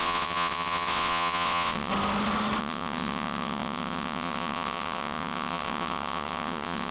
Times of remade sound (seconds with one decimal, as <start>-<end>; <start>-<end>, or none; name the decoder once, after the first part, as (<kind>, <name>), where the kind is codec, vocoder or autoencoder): 0.0-1.9 (vocoder, WaveNeXt); 2.6-6.9